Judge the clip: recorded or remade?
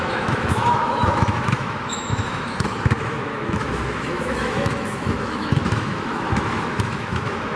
remade